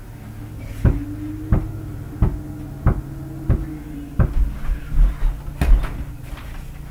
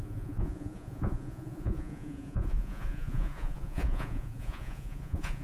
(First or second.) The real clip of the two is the first